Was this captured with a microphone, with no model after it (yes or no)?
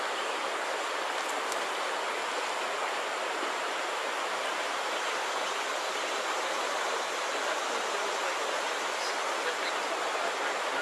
yes